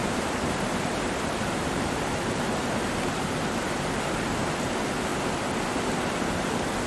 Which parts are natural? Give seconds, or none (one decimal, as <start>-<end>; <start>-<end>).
3.1-6.9